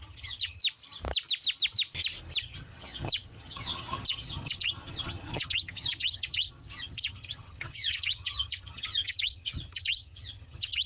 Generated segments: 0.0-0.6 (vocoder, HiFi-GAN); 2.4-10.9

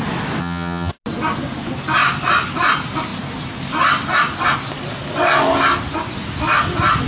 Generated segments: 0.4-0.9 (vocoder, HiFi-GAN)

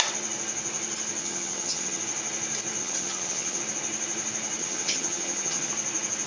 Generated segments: 1.2-2.0 (vocoder, HiFi-GAN); 2.8-3.6; 4.6-5.7

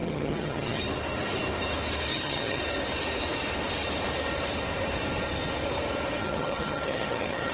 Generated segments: 0.0-0.8 (vocoder, HiFi-GAN); 2.1-2.6; 6.2-7.5

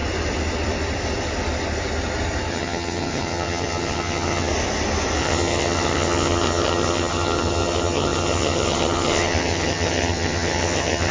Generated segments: 2.5-4.5 (vocoder, HiFi-GAN); 5.2-11.1

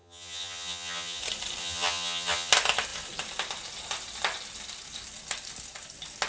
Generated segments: 0.0-1.2 (vocoder, HiFi-GAN); 1.6-2.5